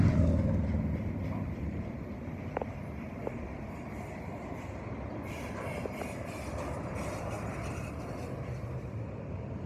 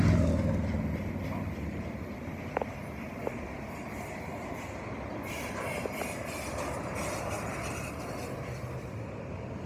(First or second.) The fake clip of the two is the first